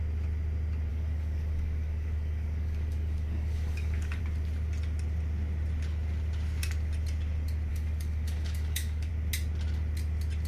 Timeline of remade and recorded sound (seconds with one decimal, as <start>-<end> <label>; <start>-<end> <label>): 0.0-0.9 recorded; 0.9-4.2 remade; 4.2-7.7 recorded; 7.7-9.1 remade; 9.1-10.5 recorded